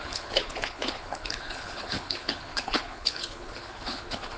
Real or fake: fake